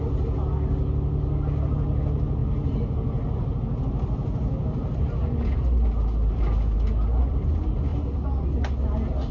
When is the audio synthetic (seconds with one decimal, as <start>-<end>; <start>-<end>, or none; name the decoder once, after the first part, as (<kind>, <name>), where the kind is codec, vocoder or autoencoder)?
none